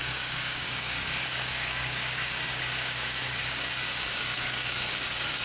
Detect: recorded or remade remade